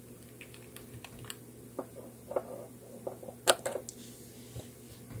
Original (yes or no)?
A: yes